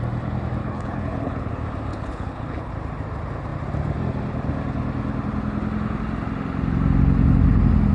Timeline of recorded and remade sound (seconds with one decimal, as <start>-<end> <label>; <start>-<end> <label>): 0.0-0.6 recorded; 0.6-1.5 remade; 1.5-1.9 recorded; 1.9-2.7 remade; 2.7-7.9 recorded